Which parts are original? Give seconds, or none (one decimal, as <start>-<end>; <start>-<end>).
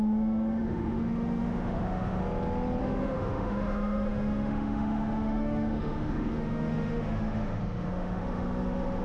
2.2-2.8